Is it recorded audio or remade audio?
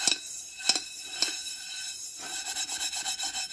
recorded